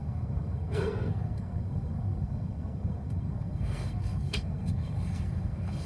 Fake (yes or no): yes